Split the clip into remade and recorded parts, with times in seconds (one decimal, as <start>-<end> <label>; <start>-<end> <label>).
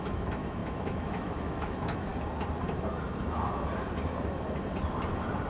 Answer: 0.0-2.1 remade; 2.1-5.5 recorded